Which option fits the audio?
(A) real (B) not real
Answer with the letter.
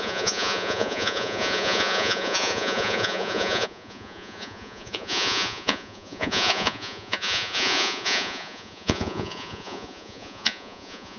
B